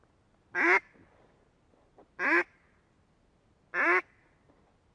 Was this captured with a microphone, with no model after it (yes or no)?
yes